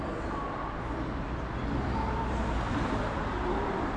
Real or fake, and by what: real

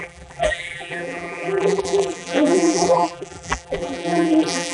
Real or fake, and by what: fake, vocoder, BigVGAN v2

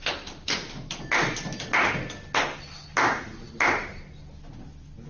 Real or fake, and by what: real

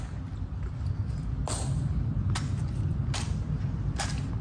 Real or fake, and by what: real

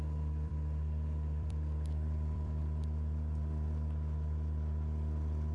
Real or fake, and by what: fake, vocoder, BigVGAN v2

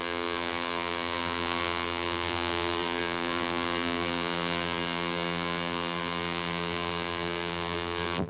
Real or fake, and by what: fake, vocoder, BigVGAN v2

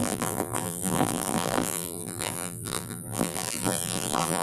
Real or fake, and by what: fake, vocoder, BigVGAN v2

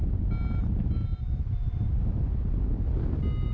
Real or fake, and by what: real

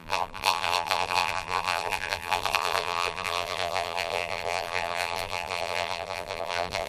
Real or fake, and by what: fake, vocoder, BigVGAN v2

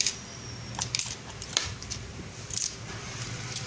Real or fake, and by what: fake, vocoder, BigVGAN v2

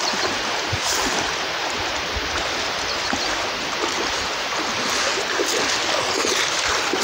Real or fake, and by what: real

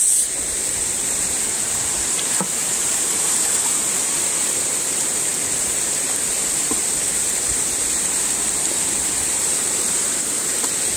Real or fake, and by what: fake, vocoder, BigVGAN v2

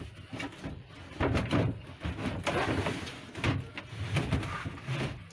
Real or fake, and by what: real